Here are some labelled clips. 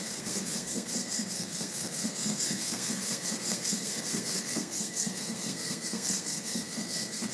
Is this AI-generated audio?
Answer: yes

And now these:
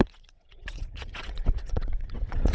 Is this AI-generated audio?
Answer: yes